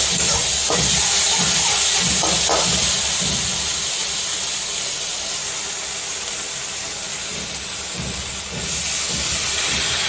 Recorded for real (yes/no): yes